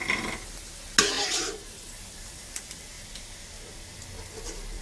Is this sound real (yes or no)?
yes